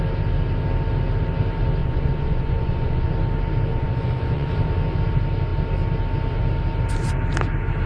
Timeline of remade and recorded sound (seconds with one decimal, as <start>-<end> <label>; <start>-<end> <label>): 0.0-1.8 recorded; 1.8-3.1 remade; 3.1-3.7 recorded; 3.7-4.5 remade; 4.5-7.9 recorded